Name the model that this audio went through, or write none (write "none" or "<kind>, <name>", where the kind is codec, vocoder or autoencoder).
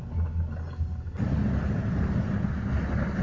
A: none